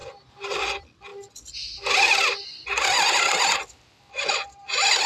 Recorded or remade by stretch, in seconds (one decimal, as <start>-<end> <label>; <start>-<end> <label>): 0.0-0.6 remade; 0.6-5.1 recorded